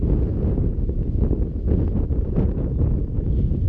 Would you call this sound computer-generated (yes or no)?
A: no